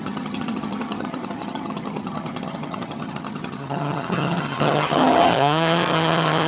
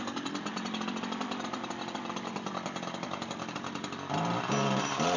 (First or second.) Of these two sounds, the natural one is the second